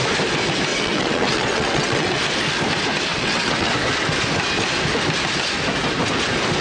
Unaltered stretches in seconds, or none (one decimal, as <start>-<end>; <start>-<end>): 0.0-0.7; 2.1-3.1; 3.7-6.6